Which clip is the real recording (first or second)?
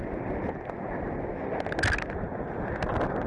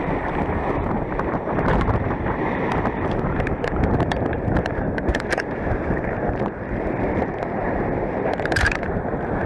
first